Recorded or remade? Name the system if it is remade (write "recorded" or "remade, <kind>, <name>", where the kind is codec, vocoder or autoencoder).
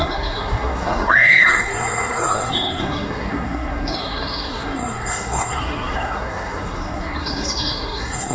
remade, codec, SNAC